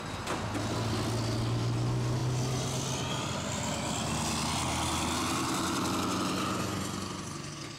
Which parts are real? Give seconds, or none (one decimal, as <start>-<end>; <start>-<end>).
0.0-7.8